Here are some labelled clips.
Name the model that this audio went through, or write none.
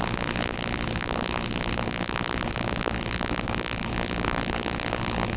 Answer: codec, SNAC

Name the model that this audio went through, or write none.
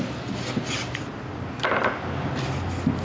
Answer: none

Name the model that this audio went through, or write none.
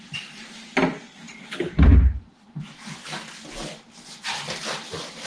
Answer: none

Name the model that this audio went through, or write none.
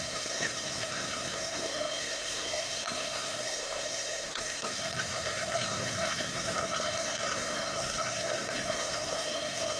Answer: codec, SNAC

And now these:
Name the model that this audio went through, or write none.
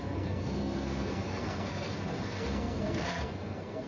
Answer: codec, SNAC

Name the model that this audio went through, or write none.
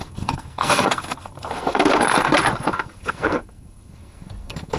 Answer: codec, SNAC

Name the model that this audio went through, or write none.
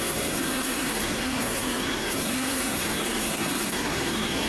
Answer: codec, SNAC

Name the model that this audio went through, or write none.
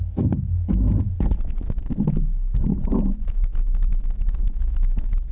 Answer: none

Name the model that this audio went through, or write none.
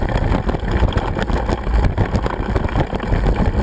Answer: none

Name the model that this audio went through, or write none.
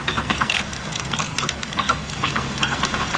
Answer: codec, SNAC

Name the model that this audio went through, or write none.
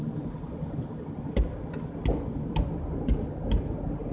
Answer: none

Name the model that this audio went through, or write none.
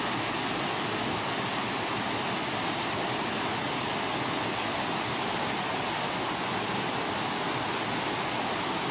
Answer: none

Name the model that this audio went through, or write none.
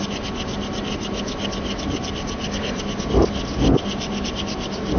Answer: none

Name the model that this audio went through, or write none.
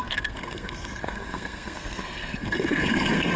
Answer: codec, SNAC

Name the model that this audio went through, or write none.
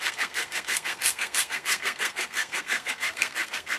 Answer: codec, SNAC